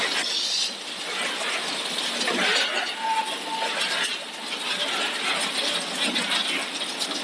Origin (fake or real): real